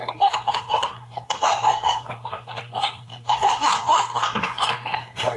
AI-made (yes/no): yes